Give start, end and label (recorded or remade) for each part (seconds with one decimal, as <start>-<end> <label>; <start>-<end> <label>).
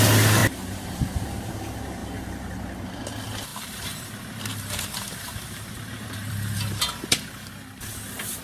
0.0-0.4 recorded; 0.4-1.5 remade; 1.5-3.5 recorded; 3.5-6.8 remade; 6.8-8.4 recorded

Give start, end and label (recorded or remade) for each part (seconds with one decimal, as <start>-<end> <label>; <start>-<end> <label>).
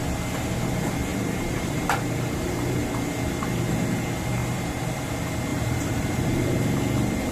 0.0-0.5 remade; 0.5-1.1 recorded; 1.1-2.8 remade; 2.8-4.4 recorded; 4.4-5.1 remade; 5.1-5.5 recorded; 5.5-6.5 remade; 6.5-7.3 recorded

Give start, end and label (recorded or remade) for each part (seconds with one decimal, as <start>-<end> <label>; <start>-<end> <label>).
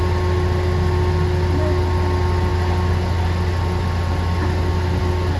0.0-5.4 recorded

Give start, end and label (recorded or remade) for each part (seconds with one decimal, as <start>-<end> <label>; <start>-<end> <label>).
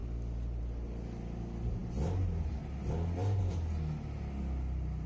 0.0-5.1 recorded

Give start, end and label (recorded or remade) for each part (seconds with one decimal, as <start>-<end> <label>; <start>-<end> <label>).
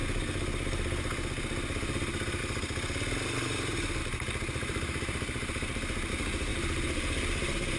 0.0-4.0 recorded; 4.0-6.1 remade; 6.1-6.5 recorded; 6.5-7.8 remade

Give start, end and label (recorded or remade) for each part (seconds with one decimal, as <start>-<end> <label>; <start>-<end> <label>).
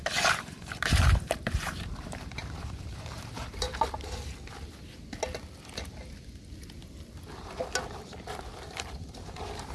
0.0-3.7 remade; 3.7-8.3 recorded; 8.3-9.7 remade